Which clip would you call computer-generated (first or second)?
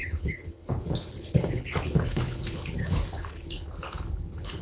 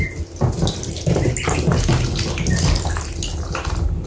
first